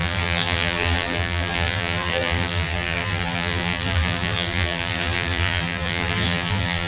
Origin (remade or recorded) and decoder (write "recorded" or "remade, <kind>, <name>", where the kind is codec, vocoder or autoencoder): remade, vocoder, BigVGAN v2